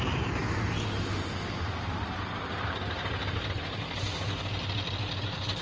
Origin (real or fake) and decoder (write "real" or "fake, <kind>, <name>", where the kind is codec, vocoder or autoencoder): real